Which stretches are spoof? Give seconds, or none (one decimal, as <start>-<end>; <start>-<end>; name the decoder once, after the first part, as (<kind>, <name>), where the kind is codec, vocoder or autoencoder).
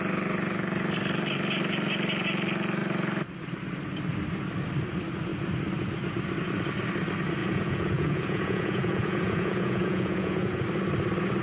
7.4-10.6 (vocoder, Vocos)